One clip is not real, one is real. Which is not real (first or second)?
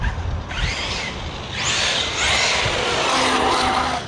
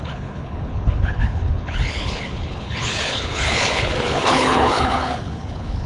second